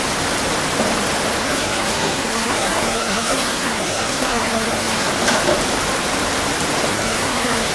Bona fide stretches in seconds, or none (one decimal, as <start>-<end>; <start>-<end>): 0.0-1.4; 5.1-6.9